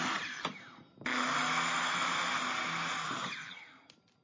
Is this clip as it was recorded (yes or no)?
yes